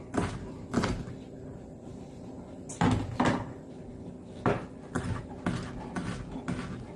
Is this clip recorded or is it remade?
recorded